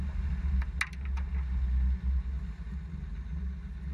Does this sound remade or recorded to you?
recorded